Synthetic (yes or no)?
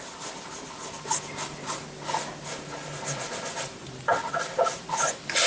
no